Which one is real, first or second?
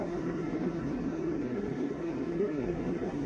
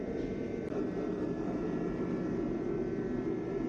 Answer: second